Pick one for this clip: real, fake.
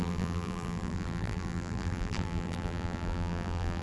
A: fake